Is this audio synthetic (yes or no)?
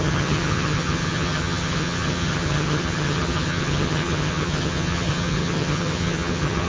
yes